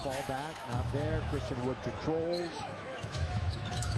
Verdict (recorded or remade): remade